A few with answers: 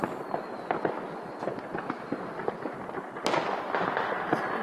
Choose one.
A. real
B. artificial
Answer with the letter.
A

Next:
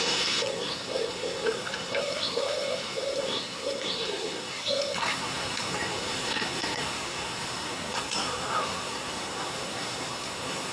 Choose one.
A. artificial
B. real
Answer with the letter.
A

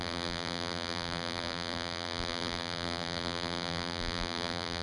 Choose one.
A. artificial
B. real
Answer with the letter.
A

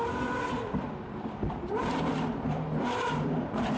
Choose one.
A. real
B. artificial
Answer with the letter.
B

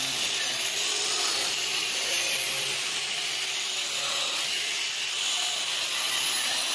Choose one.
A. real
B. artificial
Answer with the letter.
A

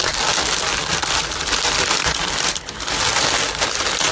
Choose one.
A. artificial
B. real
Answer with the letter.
B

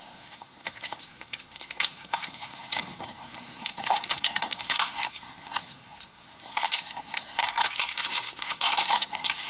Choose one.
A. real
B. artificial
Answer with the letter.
B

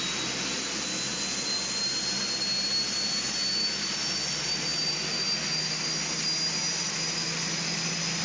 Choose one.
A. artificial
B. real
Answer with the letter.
B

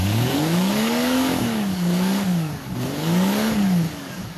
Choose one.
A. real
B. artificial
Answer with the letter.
B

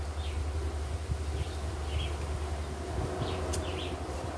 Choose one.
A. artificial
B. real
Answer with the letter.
B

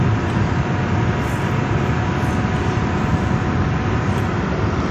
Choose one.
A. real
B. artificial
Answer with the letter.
A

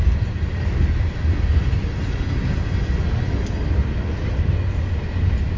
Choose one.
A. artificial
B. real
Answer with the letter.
B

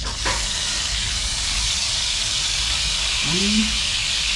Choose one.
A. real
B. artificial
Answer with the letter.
B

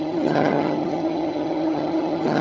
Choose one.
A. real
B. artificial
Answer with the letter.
B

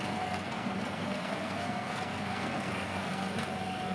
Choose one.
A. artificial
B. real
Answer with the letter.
A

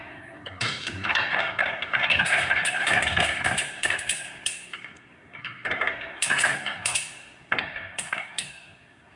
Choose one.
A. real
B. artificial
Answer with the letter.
B